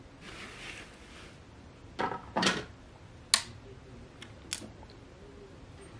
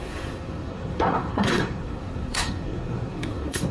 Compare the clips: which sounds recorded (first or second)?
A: first